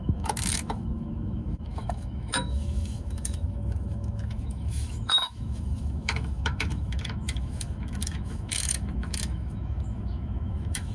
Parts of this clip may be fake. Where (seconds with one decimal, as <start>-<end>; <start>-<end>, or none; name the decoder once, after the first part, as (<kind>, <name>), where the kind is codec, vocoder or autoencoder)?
0.0-10.9 (autoencoder, DAC-VAE)